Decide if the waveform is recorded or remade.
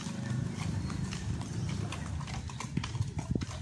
remade